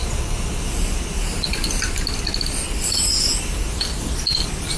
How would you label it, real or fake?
real